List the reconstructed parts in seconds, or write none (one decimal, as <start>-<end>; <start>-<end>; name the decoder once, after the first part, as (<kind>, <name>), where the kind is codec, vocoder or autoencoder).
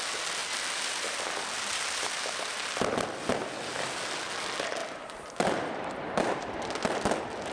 none